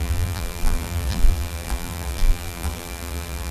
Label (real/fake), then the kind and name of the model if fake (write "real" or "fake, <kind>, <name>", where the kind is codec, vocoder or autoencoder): fake, vocoder, BigVGAN v2